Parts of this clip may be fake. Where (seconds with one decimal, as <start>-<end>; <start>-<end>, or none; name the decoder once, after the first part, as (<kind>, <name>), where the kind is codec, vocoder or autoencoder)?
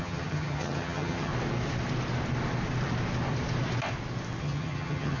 0.0-1.3 (vocoder, HiFi-GAN); 4.4-5.2